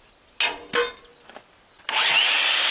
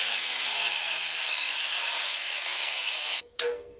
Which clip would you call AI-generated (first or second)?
second